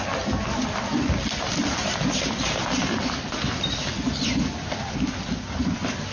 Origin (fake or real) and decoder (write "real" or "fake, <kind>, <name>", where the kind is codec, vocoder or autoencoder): real